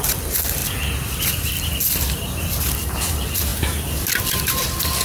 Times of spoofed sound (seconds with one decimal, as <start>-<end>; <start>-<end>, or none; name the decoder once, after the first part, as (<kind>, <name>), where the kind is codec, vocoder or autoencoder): none